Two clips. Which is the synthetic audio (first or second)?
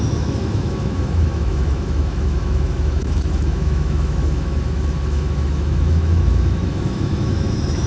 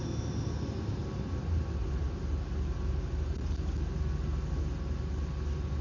first